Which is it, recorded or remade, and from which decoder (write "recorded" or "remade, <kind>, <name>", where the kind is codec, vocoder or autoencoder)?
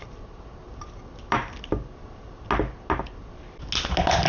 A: recorded